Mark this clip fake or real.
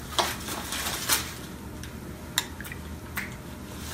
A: real